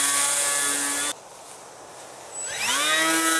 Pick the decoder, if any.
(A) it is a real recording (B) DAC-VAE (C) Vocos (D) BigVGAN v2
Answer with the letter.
A